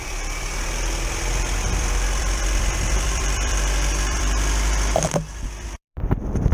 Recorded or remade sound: remade